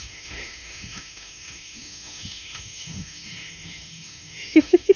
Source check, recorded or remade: remade